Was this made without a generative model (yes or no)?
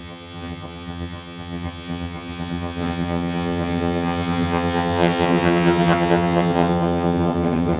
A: no